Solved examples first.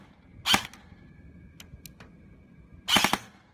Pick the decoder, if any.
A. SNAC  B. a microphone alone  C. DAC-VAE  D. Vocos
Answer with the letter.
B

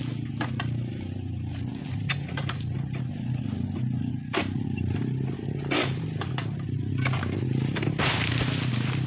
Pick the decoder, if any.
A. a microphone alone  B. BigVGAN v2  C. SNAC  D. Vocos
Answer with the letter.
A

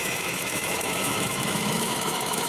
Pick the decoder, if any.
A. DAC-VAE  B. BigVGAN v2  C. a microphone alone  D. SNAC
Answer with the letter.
A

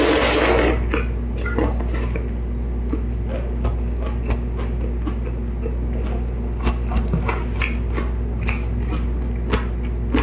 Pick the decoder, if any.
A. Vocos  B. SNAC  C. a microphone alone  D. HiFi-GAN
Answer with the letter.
C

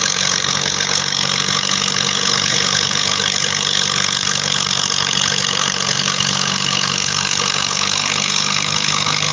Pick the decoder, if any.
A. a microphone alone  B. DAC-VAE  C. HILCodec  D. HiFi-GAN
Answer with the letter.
C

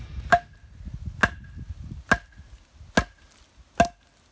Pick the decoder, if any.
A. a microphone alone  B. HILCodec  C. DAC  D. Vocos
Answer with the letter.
A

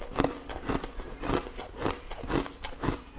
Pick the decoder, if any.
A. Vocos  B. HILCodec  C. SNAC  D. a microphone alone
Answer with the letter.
D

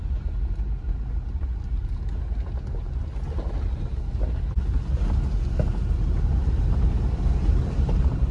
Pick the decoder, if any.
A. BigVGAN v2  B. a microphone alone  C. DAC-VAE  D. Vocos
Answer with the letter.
B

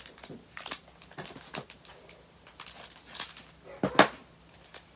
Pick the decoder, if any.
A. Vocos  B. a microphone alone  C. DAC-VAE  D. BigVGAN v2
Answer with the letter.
B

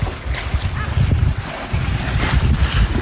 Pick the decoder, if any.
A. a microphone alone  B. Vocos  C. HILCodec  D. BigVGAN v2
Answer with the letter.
A